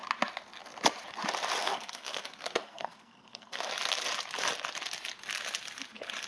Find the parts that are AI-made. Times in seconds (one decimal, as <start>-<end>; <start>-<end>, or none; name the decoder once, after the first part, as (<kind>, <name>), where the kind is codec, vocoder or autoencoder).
1.6-3.7 (codec, SNAC)